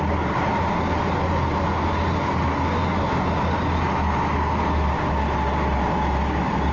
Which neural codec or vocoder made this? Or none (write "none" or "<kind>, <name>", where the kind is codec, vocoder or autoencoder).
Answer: none